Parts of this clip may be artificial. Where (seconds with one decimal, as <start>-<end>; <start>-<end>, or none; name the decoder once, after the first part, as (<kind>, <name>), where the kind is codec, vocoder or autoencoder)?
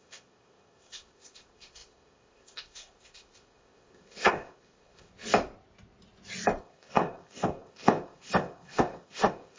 0.0-5.1 (codec, ZipCodec); 6.6-9.6